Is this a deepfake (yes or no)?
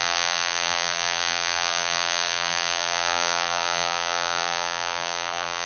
yes